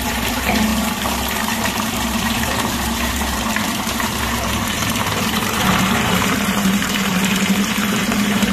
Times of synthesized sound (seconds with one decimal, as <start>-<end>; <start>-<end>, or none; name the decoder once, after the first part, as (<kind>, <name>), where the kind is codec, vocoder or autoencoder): 0.0-0.7 (vocoder, BigVGAN v2); 1.9-8.5